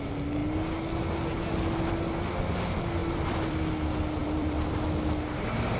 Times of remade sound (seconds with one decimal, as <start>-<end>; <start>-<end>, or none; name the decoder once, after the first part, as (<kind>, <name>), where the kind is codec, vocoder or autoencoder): 3.0-3.6 (vocoder, BigVGAN v2); 4.2-4.7